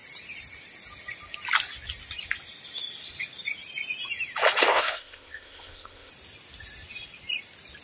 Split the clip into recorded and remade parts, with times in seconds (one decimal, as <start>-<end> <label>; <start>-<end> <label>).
0.0-4.7 recorded; 4.7-6.1 remade; 6.1-7.8 recorded